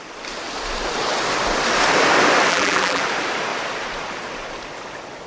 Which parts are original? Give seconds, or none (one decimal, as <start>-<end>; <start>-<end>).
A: 0.0-2.5; 3.0-5.3